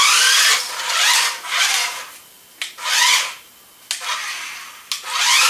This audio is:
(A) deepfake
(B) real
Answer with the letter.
B